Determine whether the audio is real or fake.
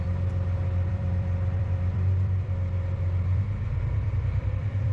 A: fake